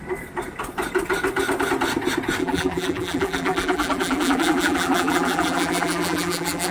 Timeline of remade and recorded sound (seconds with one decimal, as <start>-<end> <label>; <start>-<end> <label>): 0.0-2.4 recorded; 2.4-6.7 remade